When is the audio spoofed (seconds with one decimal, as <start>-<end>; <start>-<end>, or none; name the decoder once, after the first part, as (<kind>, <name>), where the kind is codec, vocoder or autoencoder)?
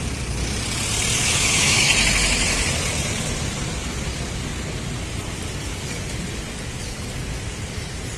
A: 1.2-1.9 (autoencoder, DAC-VAE)